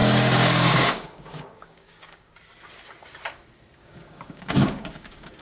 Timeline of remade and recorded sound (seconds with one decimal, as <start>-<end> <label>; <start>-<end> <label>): 0.0-2.3 remade; 2.3-3.8 recorded; 3.8-5.4 remade